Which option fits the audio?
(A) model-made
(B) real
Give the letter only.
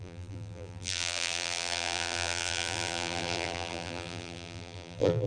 A